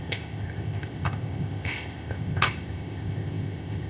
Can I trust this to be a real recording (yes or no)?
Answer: no